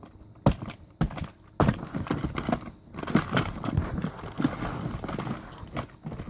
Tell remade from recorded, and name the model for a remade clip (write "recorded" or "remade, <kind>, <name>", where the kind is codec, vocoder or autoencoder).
recorded